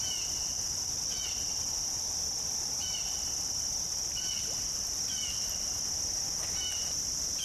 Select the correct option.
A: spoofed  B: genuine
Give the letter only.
A